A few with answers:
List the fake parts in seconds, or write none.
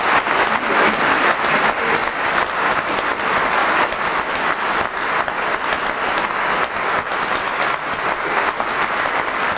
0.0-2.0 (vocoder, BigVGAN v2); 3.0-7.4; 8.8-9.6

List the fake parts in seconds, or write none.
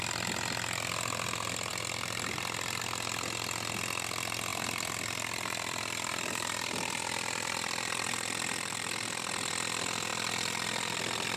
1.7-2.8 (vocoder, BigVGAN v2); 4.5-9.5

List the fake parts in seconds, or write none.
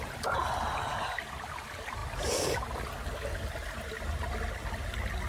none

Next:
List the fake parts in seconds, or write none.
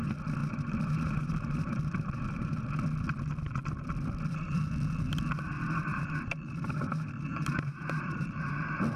0.4-2.7 (vocoder, BigVGAN v2); 5.9-8.4